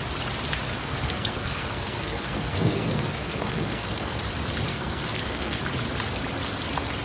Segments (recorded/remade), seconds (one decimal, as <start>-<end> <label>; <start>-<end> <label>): 0.0-0.8 recorded; 0.8-4.3 remade; 4.3-4.7 recorded; 4.7-5.6 remade; 5.6-7.0 recorded